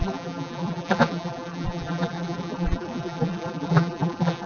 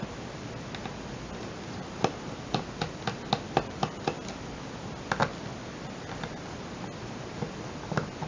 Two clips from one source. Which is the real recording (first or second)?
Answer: second